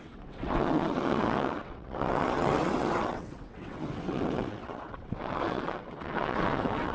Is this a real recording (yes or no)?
no